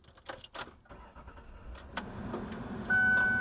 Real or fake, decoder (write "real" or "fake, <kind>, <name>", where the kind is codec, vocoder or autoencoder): real